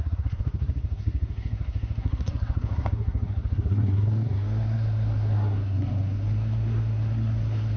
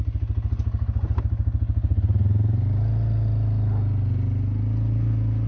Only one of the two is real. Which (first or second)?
second